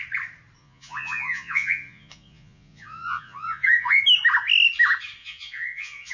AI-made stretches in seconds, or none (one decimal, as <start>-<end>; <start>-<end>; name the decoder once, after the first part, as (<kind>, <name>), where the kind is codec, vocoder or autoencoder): 0.6-4.0 (vocoder, Vocos); 5.2-6.1